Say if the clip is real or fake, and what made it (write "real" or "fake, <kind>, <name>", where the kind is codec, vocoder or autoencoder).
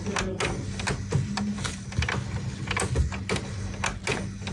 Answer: real